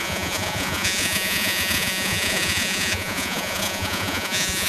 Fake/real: fake